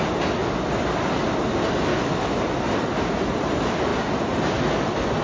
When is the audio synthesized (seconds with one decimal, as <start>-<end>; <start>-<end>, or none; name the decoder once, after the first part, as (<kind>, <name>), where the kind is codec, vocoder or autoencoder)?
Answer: 1.9-2.4 (autoencoder, DAC-VAE)